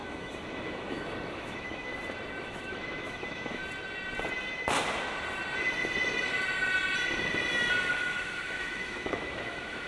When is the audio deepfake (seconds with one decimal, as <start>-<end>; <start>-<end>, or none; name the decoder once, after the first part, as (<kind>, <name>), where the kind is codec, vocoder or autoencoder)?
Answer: 0.0-1.9 (autoencoder, DAC-VAE); 2.4-3.6; 7.9-9.9